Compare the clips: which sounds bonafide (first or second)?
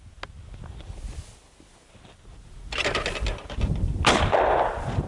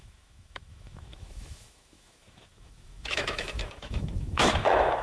first